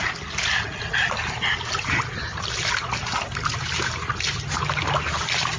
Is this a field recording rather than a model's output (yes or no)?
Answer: yes